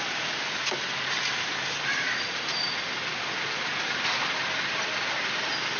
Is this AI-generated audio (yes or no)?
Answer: no